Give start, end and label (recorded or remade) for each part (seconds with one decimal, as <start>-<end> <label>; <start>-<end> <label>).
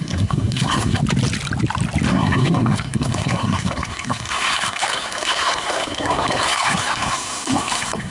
0.0-1.0 remade; 1.0-2.1 recorded; 2.1-8.1 remade